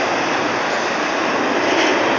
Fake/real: real